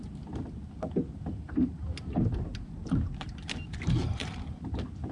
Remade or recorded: recorded